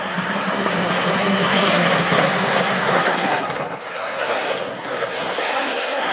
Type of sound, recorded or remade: remade